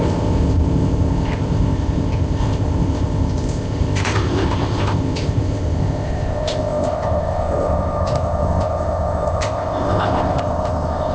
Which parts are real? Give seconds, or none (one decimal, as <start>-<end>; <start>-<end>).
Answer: none